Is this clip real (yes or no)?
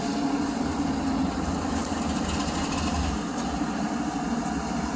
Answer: yes